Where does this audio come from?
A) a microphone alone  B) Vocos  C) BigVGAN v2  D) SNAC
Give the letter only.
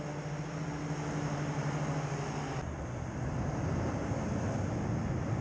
A